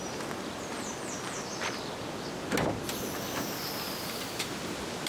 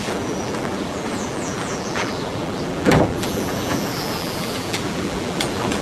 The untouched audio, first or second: first